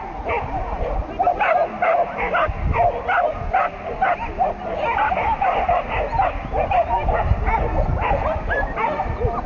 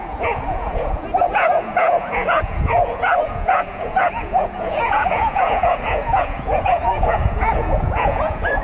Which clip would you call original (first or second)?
first